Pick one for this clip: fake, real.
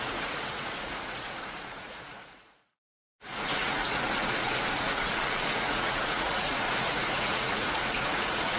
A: fake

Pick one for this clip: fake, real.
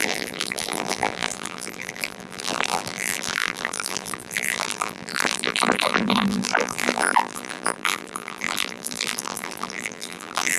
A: fake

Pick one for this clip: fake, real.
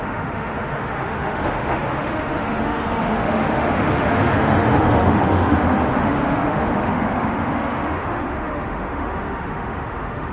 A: fake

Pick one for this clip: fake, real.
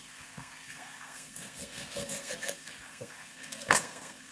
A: fake